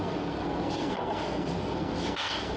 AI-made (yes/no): yes